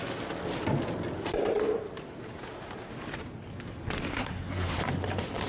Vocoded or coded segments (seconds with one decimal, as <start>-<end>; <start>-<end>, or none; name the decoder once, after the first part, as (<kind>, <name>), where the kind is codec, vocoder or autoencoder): 4.1-4.8 (codec, SNAC)